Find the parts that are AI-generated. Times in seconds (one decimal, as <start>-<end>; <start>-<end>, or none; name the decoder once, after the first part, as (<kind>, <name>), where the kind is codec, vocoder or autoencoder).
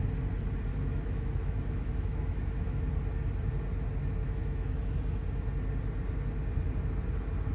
0.7-2.8 (autoencoder, DAC-VAE); 4.2-4.8